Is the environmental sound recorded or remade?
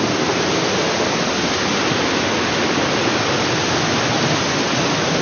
recorded